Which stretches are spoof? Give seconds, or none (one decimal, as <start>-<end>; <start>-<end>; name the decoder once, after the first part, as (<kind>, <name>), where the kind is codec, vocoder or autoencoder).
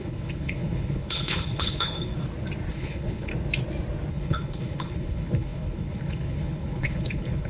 0.0-2.1 (codec, HILCodec); 2.7-3.3; 4.1-7.5